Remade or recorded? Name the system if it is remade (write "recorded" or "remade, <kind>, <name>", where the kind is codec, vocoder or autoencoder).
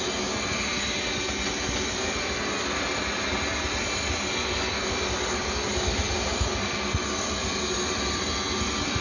recorded